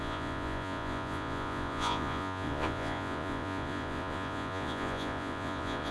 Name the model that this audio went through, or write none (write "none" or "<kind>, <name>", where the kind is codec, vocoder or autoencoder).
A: vocoder, Vocos